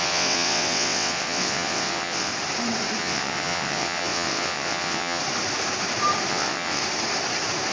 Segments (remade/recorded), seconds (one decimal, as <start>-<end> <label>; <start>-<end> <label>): 0.0-2.3 remade; 2.3-3.0 recorded; 3.0-5.2 remade; 5.2-6.3 recorded; 6.3-6.8 remade; 6.8-7.7 recorded